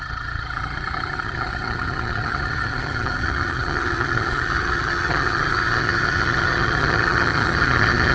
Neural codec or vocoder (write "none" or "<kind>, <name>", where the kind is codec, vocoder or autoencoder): vocoder, HiFi-GAN